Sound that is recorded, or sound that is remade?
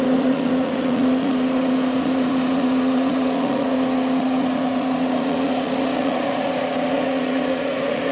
remade